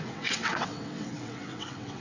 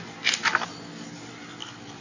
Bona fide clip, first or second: second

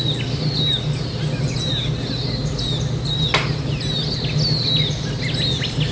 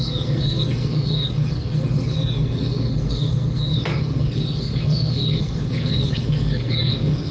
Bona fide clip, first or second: first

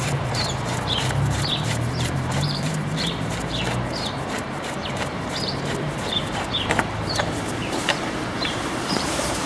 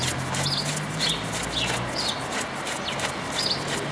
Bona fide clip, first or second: second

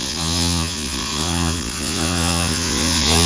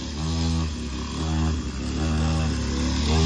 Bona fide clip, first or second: second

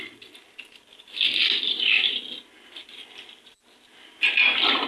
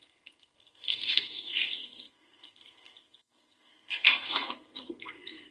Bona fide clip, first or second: first